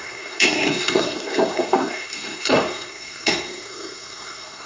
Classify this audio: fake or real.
fake